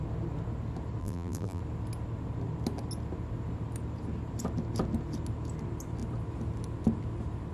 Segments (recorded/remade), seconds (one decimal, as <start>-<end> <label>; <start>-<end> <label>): 0.0-1.0 recorded; 1.0-1.6 remade; 1.6-7.5 recorded